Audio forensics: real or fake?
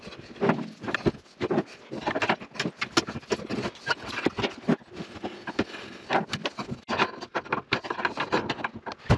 real